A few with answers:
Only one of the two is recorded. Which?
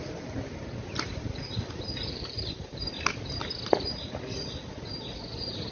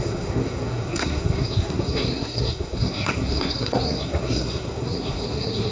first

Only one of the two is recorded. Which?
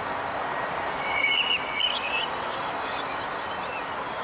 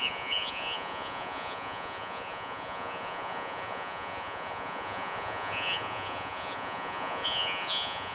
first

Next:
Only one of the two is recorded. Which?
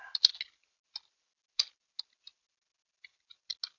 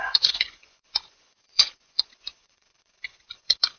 first